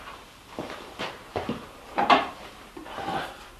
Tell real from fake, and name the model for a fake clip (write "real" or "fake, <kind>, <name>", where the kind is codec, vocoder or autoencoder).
fake, vocoder, BigVGAN v2